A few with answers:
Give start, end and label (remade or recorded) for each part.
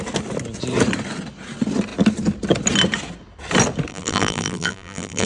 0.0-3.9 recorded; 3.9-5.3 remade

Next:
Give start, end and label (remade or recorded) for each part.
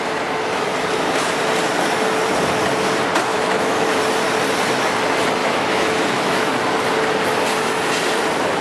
0.0-3.3 recorded; 3.3-4.0 remade; 4.0-5.4 recorded; 5.4-6.5 remade; 6.5-8.6 recorded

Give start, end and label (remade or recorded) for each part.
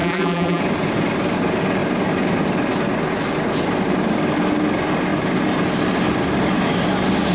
0.0-0.6 remade; 0.6-7.3 recorded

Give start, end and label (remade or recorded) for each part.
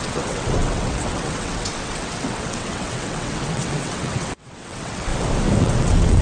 0.0-5.1 remade; 5.1-5.6 recorded; 5.6-6.2 remade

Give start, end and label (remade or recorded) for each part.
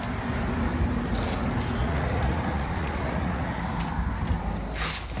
0.0-1.8 recorded; 1.8-3.6 remade; 3.6-5.2 recorded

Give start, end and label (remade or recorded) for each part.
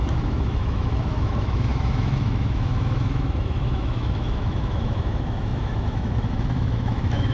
0.0-7.3 remade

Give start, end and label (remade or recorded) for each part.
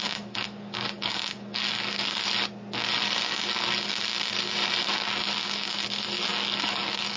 0.0-2.2 remade; 2.2-4.8 recorded; 4.8-7.2 remade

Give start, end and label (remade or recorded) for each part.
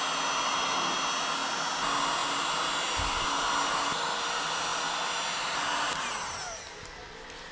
0.0-7.5 recorded